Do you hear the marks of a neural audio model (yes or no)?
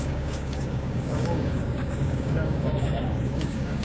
yes